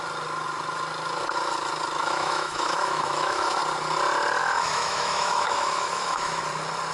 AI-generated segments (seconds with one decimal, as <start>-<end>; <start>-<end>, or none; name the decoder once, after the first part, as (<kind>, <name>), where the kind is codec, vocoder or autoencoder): 2.0-3.6 (autoencoder, DAC-VAE); 4.4-6.4